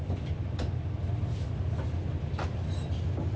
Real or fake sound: real